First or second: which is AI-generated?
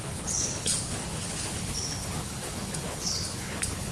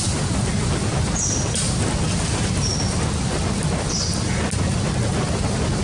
first